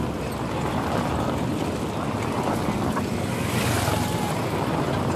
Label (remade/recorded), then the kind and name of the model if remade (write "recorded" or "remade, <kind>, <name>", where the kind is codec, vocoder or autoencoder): recorded